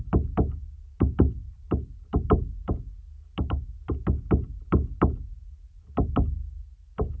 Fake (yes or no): no